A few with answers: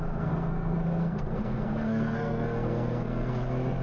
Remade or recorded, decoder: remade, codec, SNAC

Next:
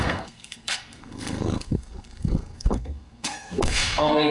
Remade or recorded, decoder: remade, codec, SNAC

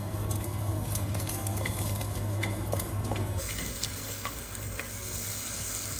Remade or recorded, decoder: remade, codec, SNAC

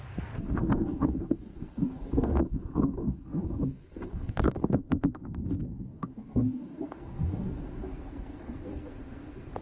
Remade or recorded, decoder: remade, codec, SNAC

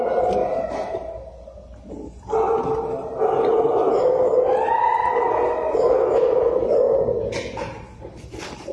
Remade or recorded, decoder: recorded